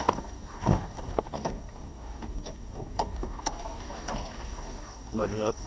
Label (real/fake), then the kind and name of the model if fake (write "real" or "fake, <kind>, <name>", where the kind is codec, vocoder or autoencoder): fake, codec, DAC